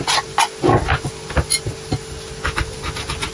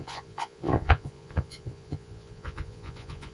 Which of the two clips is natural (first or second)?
first